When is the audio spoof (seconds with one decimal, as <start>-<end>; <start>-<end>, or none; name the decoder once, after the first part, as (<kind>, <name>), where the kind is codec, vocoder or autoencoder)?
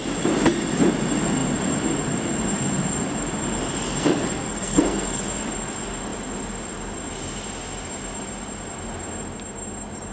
3.9-5.2 (codec, SNAC)